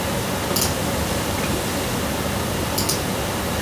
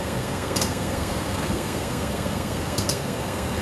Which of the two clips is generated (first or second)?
second